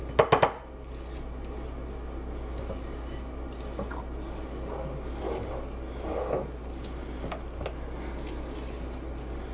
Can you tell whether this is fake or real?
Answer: real